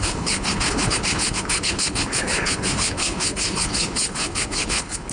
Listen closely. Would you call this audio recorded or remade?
remade